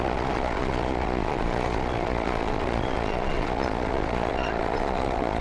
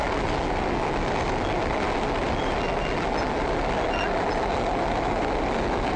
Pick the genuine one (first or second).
second